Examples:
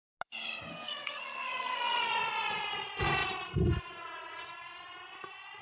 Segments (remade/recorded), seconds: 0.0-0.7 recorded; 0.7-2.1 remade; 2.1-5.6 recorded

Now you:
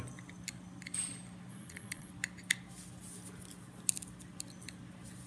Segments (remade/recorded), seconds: 0.0-1.5 recorded; 1.5-2.1 remade; 2.1-5.3 recorded

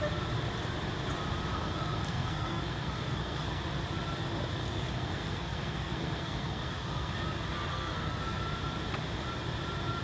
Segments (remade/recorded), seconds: 0.0-1.5 recorded; 1.5-3.6 remade; 3.6-4.6 recorded; 4.6-7.1 remade; 7.1-7.7 recorded; 7.7-8.4 remade; 8.4-10.0 recorded